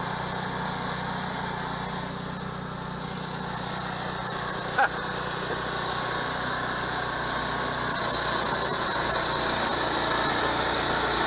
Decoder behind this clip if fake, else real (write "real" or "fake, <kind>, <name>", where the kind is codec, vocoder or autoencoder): real